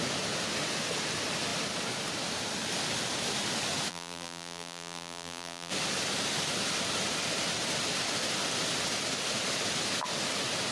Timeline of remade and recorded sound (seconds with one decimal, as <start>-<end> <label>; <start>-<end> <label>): 0.0-3.9 recorded; 3.9-5.7 remade; 5.7-10.7 recorded